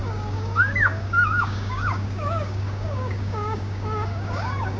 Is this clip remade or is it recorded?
remade